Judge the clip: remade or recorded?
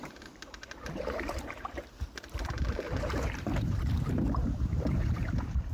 remade